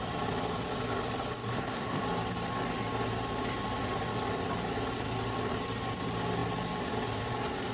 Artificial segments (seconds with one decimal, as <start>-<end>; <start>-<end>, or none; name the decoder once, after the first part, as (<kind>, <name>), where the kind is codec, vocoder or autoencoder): 1.5-2.0 (codec, SNAC)